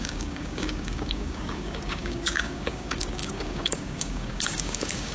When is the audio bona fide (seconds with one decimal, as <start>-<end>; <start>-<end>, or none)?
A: none